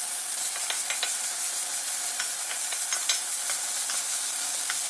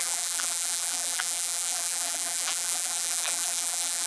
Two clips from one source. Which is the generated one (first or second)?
second